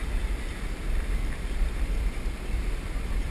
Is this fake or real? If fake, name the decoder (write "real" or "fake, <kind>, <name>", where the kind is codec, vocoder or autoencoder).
fake, vocoder, BigVGAN v2